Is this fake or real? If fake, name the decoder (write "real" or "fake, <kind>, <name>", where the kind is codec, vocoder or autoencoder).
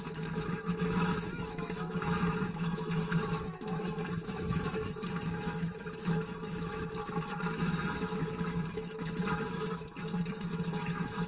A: fake, autoencoder, DAC-VAE